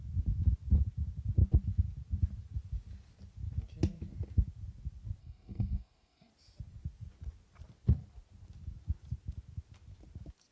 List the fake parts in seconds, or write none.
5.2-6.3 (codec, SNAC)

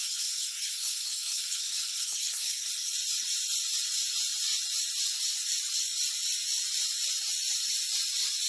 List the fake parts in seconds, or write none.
0.0-2.7 (codec, SNAC)

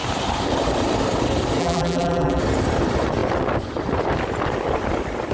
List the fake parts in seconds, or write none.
1.6-2.4 (vocoder, BigVGAN v2)

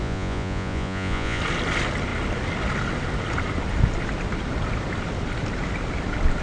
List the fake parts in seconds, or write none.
0.0-1.4 (vocoder, Vocos)

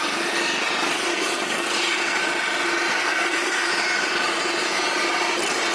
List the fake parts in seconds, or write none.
1.1-2.2 (codec, SNAC); 2.9-3.7

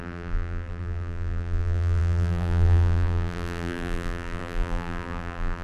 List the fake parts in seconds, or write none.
0.0-5.6 (vocoder, BigVGAN v2)